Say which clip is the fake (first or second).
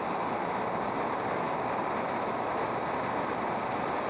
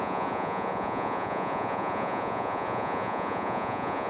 second